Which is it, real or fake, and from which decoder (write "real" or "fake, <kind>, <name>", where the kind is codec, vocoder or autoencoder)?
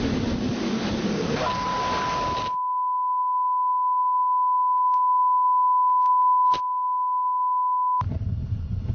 real